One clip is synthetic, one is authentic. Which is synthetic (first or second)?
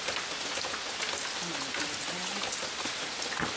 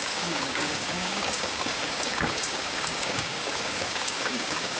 second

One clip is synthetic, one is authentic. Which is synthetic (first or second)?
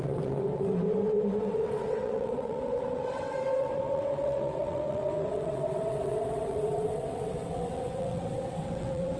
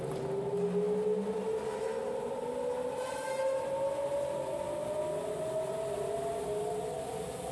first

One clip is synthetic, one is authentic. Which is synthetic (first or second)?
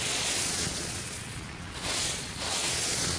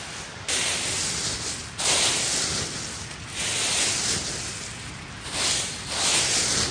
first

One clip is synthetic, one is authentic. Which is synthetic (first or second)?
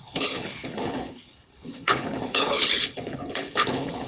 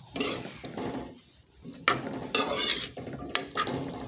first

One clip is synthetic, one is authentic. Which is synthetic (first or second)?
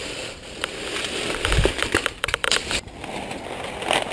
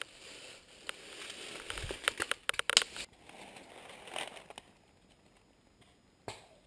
first